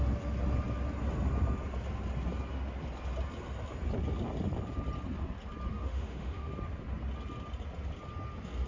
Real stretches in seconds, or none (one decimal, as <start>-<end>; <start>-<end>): 0.0-5.7; 6.5-8.7